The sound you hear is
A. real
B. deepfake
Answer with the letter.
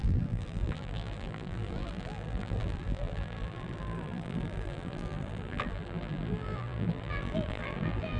B